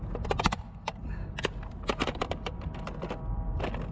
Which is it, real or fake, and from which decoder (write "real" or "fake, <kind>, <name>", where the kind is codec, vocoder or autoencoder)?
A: real